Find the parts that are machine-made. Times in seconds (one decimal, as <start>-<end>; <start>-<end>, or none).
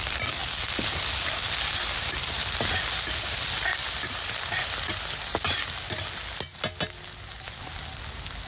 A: 0.4-0.9; 3.8-5.2